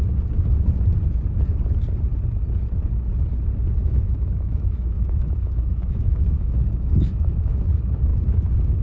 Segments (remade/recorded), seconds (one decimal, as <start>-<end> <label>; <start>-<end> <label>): 0.0-3.8 recorded; 3.8-7.6 remade; 7.6-8.8 recorded